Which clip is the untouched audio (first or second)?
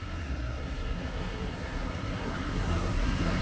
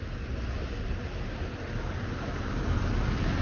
second